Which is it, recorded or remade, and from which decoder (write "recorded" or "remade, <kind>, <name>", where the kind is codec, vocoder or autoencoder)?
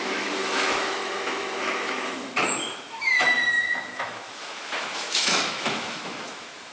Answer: remade, autoencoder, DAC-VAE